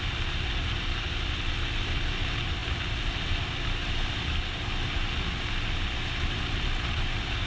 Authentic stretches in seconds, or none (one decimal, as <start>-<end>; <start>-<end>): 0.0-7.5